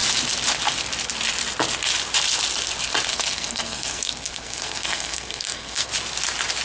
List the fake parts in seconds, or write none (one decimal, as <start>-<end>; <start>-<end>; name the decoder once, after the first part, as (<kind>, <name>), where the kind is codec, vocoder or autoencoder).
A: 3.1-5.9 (codec, SNAC)